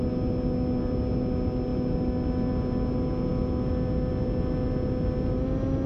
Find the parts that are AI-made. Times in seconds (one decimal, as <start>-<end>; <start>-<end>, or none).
none